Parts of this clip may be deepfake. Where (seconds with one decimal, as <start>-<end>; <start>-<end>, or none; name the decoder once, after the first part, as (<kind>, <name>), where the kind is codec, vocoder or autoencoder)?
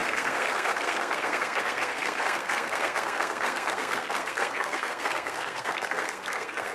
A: 0.0-6.7 (codec, SNAC)